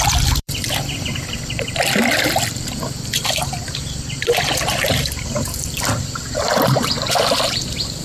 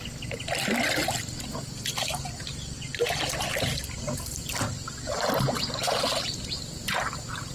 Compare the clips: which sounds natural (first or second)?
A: second